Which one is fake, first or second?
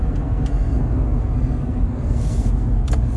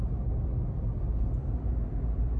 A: first